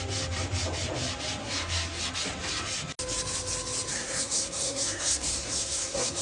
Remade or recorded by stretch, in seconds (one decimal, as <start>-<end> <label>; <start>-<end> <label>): 0.0-1.4 recorded; 1.4-2.0 remade; 2.0-3.9 recorded; 3.9-6.2 remade